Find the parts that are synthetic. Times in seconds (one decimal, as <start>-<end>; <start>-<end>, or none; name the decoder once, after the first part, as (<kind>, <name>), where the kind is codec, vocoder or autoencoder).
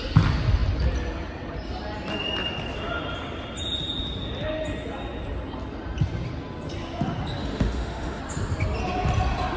7.4-8.2 (autoencoder, DAC-VAE)